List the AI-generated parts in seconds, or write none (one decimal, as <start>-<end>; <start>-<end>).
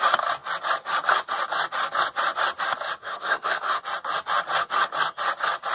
3.0-3.8